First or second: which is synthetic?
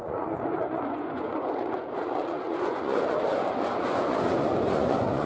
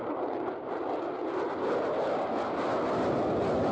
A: first